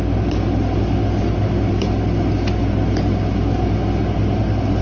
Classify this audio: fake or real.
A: real